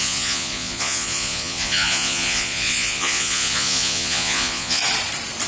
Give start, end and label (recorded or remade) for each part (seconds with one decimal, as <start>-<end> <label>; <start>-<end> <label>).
0.0-4.8 remade; 4.8-5.5 recorded